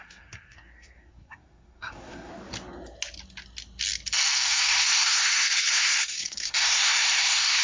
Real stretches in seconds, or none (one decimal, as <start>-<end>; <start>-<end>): 2.3-4.6